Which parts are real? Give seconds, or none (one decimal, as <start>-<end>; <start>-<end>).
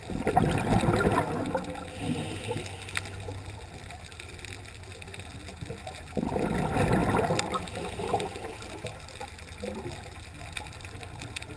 0.0-11.6